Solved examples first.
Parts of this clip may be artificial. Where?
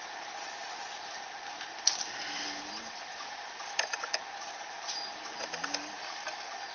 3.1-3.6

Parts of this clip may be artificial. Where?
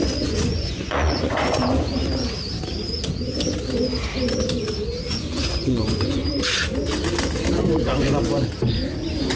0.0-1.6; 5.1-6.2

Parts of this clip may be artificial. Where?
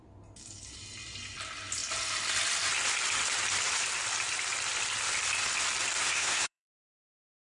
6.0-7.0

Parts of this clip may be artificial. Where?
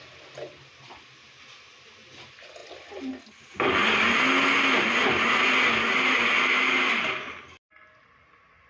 none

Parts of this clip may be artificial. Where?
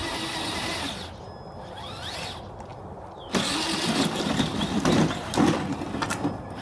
none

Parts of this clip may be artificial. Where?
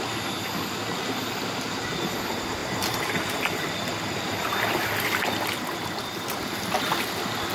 2.6-4.5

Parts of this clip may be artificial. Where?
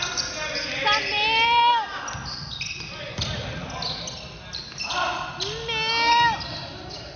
none